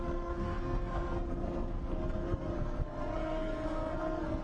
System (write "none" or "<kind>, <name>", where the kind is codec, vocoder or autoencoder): codec, SNAC